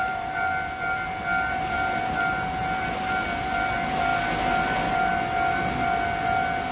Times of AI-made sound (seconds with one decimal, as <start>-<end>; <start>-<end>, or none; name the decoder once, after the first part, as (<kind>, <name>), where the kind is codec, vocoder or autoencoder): none